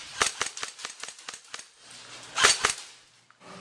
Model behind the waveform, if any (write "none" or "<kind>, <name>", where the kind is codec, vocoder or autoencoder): none